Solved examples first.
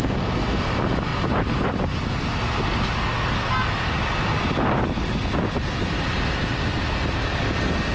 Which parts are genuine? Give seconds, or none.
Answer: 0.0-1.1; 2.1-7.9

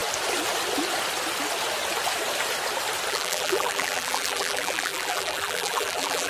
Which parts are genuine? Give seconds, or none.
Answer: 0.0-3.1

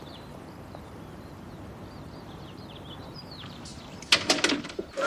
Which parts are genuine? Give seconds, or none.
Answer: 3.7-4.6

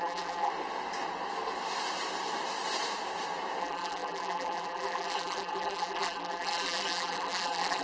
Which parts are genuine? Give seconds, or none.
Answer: 0.5-3.6

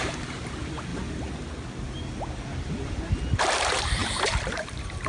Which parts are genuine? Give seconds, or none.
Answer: 0.9-3.4